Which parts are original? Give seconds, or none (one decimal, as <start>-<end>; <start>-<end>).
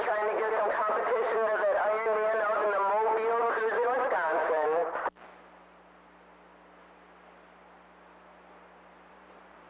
2.6-3.6; 4.8-9.1